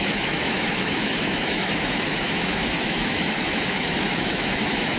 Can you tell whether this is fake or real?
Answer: fake